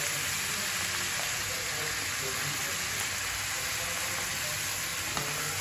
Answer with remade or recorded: recorded